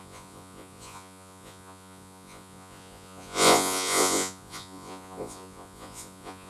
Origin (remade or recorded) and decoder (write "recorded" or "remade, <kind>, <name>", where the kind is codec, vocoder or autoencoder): remade, vocoder, Vocos